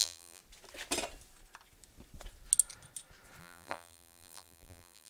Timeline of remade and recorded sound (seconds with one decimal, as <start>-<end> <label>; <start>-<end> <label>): 0.0-0.4 remade; 0.4-3.4 recorded; 3.4-5.1 remade